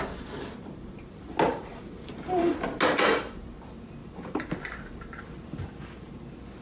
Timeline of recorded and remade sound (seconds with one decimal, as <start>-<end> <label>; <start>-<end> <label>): 0.0-1.5 recorded; 1.5-2.5 remade; 2.5-4.0 recorded; 4.0-4.5 remade; 4.5-6.6 recorded